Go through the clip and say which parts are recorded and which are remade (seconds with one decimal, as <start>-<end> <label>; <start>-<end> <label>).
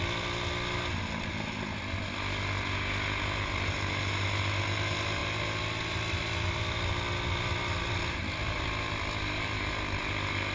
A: 0.0-10.5 recorded